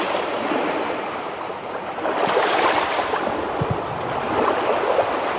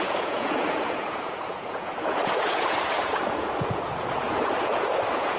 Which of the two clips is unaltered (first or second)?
first